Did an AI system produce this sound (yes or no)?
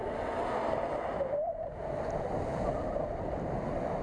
no